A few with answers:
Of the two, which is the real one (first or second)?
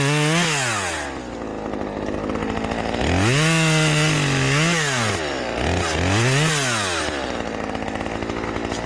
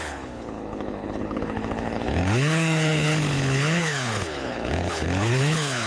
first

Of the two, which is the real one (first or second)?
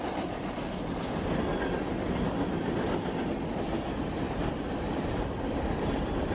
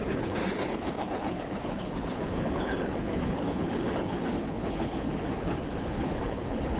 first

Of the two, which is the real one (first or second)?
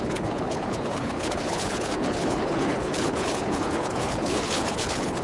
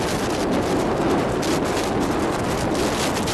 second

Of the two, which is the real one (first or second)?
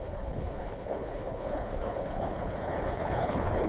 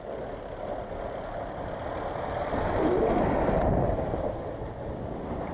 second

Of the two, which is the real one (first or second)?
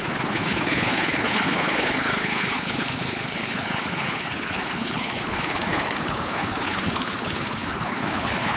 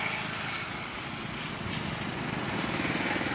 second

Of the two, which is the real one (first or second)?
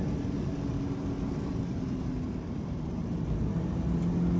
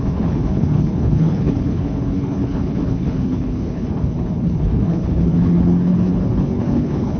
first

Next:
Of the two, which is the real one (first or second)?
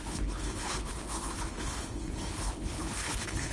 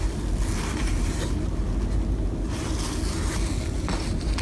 second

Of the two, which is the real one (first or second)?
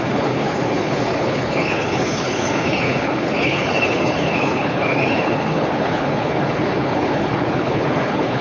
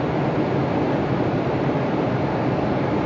second